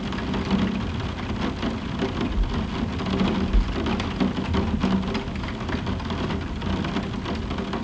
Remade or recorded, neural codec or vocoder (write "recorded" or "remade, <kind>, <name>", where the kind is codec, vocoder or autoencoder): recorded